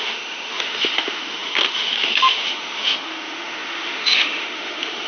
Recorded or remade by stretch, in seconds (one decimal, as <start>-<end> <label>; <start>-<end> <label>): 0.0-5.1 remade